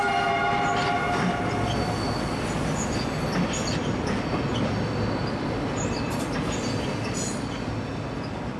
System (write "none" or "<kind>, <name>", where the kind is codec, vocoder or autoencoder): none